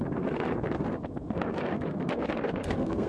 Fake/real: fake